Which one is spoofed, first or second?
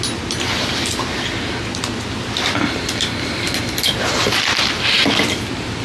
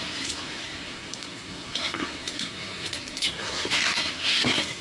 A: second